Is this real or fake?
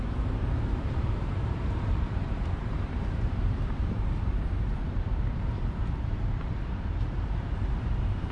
fake